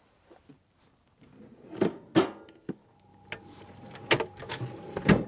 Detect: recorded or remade recorded